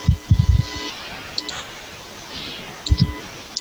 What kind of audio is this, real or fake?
real